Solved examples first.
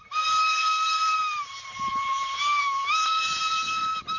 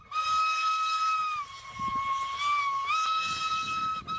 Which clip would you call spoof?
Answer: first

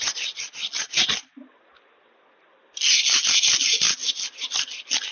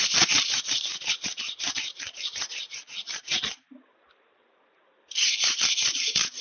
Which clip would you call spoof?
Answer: second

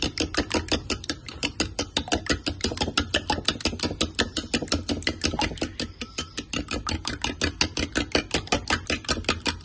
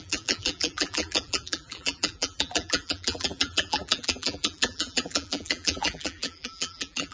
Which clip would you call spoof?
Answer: second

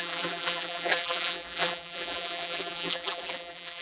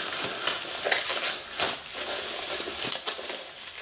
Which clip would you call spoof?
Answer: first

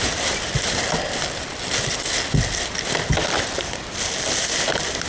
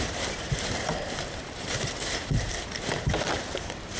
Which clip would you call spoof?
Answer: second